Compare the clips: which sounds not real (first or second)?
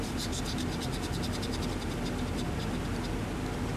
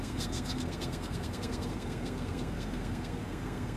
second